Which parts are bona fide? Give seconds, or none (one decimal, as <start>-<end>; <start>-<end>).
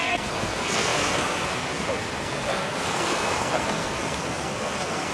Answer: none